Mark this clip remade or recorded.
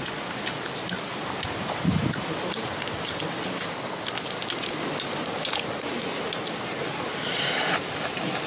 recorded